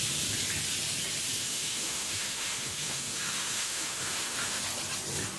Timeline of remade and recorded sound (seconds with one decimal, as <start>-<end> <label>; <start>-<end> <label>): 0.0-1.4 recorded; 1.4-4.6 remade; 4.6-5.4 recorded